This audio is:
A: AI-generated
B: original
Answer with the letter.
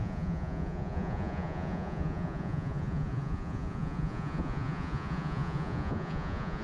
A